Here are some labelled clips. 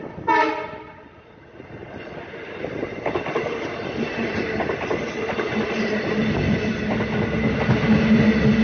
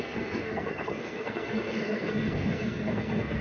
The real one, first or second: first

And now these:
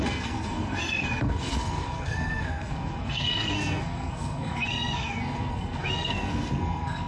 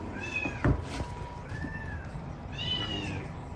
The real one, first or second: second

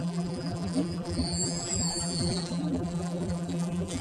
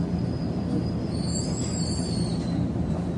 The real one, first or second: second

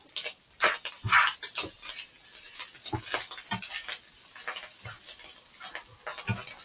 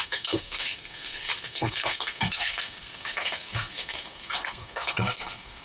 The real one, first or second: first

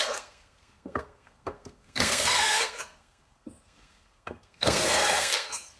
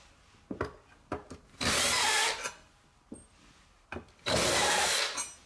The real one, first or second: second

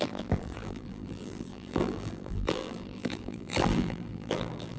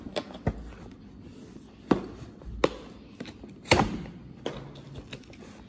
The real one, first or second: second